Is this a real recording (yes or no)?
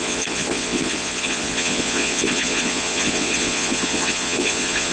no